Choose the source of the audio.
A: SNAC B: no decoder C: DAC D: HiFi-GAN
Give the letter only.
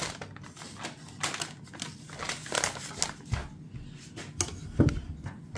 B